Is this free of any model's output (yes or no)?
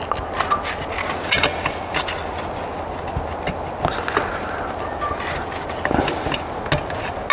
yes